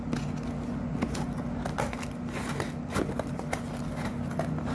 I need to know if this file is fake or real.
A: real